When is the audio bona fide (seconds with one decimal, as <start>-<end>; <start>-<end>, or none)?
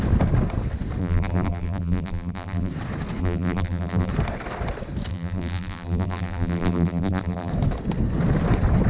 0.0-1.0; 2.7-3.2; 4.1-5.1; 7.5-8.9